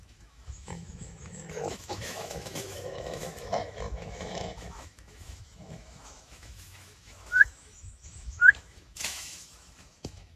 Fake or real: fake